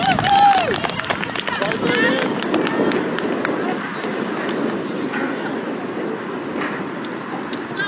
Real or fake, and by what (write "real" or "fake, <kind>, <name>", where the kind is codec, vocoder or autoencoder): real